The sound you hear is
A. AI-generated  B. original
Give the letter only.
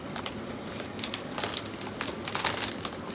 B